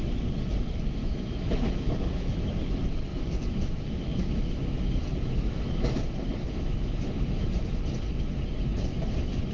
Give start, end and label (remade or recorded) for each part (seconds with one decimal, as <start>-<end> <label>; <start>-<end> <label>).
0.0-1.0 recorded; 1.0-2.5 remade; 2.5-3.1 recorded; 3.1-5.8 remade; 5.8-6.4 recorded; 6.4-7.8 remade; 7.8-9.5 recorded